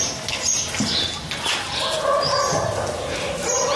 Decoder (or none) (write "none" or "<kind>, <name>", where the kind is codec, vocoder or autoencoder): none